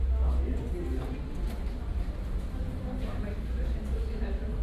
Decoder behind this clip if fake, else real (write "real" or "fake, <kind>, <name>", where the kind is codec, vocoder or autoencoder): real